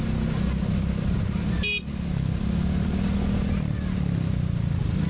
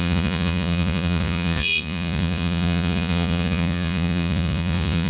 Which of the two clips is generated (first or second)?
second